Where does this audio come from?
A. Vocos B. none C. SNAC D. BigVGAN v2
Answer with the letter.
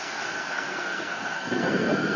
C